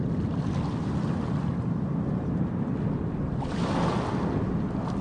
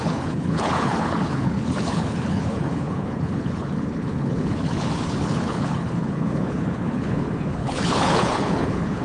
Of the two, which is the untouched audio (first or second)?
first